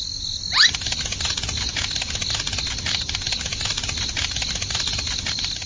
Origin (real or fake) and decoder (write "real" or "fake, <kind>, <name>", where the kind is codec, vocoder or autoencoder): real